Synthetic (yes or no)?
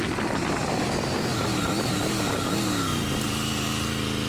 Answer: no